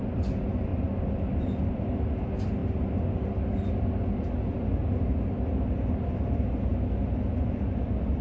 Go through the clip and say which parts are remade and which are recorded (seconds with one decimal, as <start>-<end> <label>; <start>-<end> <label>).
0.0-8.2 recorded